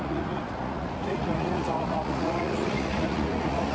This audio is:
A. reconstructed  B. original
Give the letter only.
A